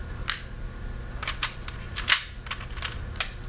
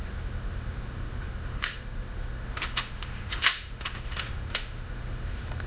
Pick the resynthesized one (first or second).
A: second